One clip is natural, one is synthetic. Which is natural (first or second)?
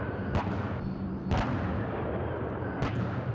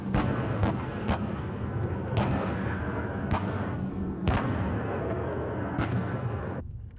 first